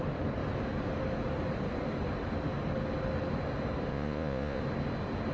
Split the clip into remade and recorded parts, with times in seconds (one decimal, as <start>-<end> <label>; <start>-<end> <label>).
0.0-3.9 recorded; 3.9-4.6 remade; 4.6-5.3 recorded